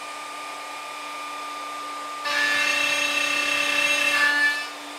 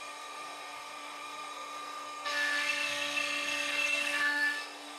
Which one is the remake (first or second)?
second